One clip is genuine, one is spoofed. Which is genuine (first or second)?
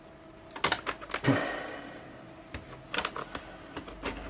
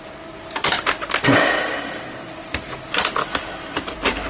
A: first